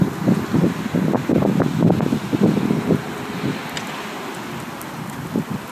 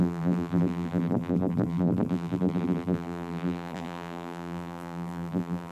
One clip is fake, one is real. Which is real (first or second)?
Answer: first